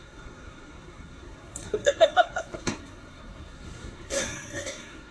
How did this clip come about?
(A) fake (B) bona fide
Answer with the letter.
A